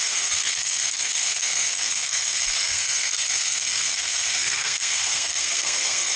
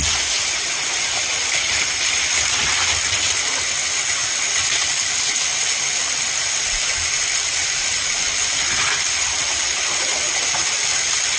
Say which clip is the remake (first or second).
first